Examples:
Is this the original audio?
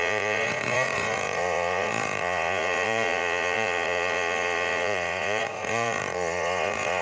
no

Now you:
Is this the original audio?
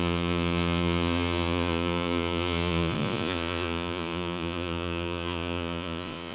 no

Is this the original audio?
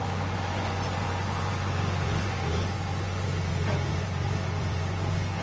no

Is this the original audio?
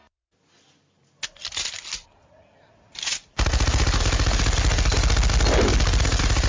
yes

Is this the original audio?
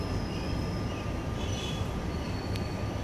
yes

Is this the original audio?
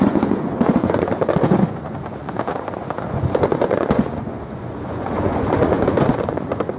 no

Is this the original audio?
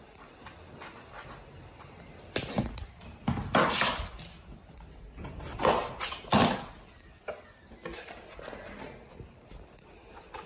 yes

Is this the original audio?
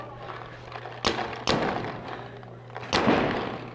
yes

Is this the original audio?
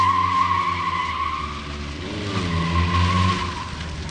yes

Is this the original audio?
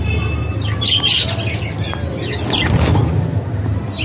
yes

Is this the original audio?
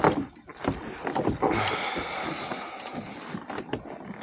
yes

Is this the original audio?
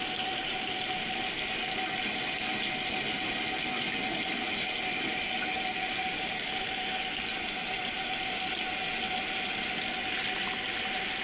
yes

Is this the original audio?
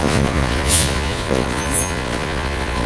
no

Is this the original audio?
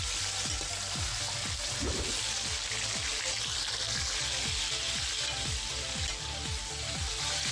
yes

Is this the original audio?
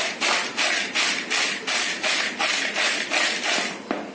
yes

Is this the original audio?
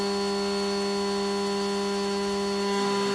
yes